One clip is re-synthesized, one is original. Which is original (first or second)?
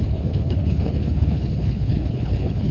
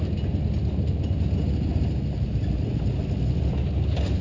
second